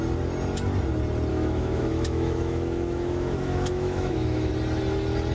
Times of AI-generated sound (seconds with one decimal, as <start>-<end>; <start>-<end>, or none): 1.3-4.5